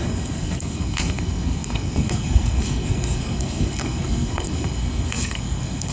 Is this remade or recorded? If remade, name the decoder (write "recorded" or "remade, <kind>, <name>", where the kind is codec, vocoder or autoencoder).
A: remade, codec, SNAC